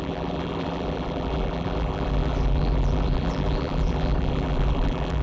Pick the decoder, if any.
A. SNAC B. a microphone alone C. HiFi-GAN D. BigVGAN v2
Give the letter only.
D